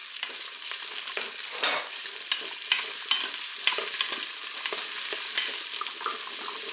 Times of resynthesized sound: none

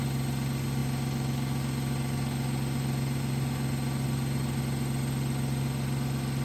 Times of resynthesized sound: none

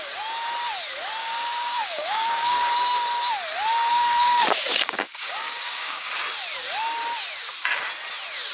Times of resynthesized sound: 1.2-2.7; 3.9-6.1

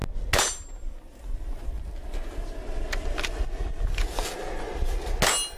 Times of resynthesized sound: none

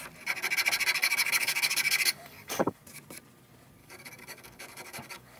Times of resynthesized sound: 1.0-2.8; 3.8-5.4

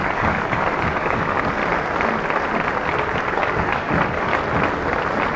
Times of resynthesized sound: 0.0-1.6; 3.2-4.3

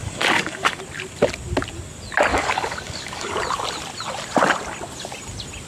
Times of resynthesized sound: 0.0-0.8; 2.3-3.4